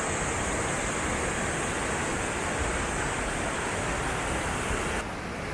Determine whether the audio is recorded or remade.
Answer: recorded